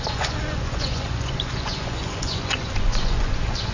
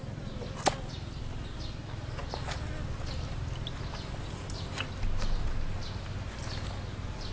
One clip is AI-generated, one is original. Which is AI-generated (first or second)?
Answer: first